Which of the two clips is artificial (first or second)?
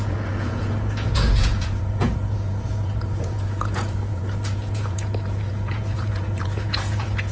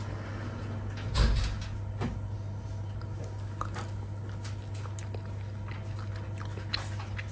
first